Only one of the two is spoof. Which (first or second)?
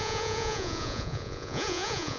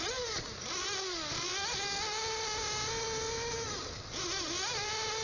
first